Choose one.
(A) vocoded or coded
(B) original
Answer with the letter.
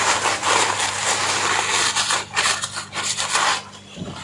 B